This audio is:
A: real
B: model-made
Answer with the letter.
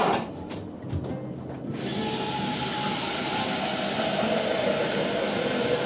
A